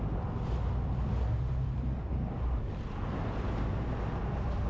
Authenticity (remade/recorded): recorded